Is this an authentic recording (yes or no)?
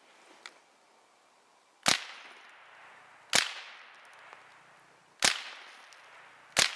yes